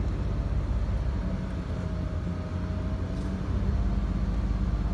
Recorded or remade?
recorded